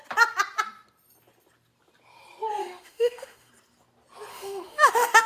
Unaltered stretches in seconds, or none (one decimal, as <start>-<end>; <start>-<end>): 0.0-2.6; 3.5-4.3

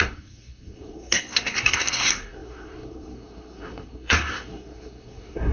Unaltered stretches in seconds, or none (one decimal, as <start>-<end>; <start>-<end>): none

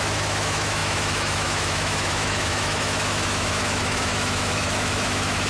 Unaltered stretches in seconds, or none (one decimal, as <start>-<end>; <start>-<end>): none

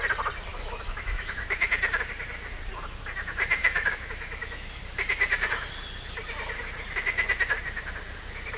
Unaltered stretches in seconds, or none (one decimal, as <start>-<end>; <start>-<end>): 0.0-0.5; 1.7-3.6; 4.8-8.6

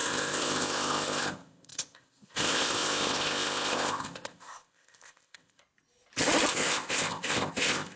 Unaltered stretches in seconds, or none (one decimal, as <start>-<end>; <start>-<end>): 5.6-6.5

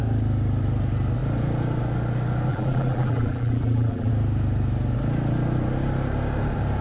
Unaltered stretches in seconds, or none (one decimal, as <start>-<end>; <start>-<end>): 0.0-2.5; 4.1-6.8

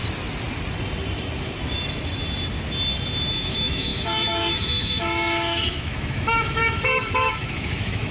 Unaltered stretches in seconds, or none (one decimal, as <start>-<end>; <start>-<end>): 0.0-3.3

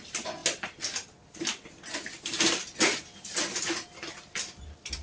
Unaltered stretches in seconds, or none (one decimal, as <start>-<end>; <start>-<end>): 0.0-5.0